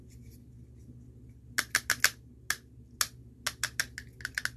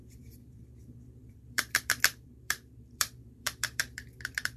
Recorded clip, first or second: first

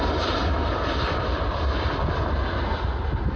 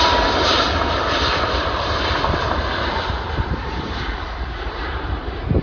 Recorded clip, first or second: first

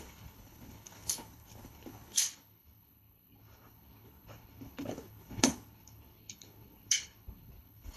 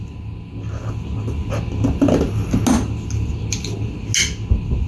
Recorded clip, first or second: second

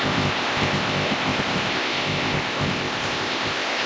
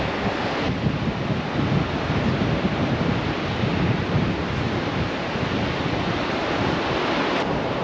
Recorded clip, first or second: second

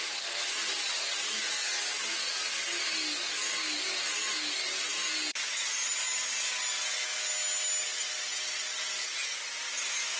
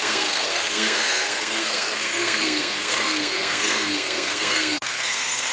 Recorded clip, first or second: first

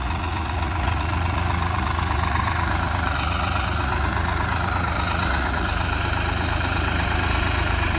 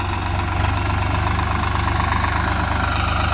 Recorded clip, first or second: second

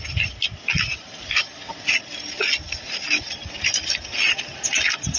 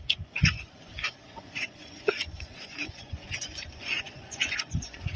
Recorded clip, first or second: first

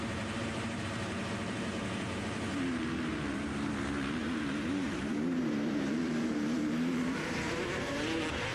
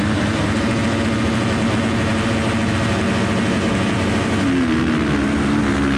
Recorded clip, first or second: second